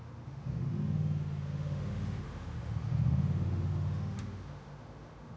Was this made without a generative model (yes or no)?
no